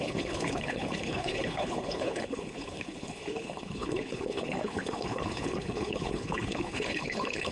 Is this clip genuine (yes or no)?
no